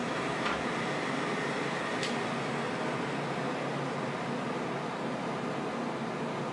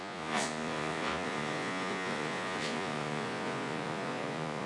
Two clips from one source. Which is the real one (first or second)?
first